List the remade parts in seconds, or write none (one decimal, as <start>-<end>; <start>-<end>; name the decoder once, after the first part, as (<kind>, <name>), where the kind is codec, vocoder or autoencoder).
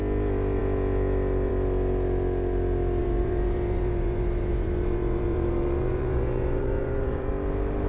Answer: 3.0-7.3 (vocoder, Vocos)